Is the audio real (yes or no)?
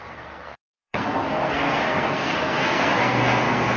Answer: no